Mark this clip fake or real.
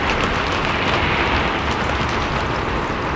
real